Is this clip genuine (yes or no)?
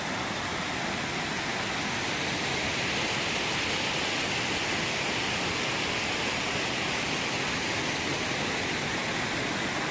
yes